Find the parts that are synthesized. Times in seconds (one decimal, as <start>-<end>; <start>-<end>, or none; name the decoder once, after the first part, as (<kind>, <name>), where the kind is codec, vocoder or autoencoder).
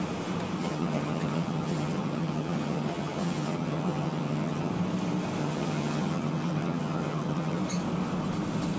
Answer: 0.6-4.7 (vocoder, HiFi-GAN); 5.4-7.6